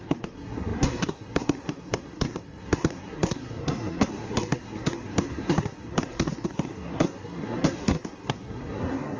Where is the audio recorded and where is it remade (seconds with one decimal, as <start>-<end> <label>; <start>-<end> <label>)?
0.0-9.2 remade